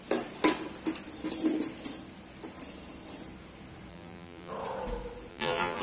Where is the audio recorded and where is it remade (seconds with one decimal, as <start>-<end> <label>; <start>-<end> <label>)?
0.0-3.9 recorded; 3.9-4.5 remade; 4.5-5.3 recorded; 5.3-5.8 remade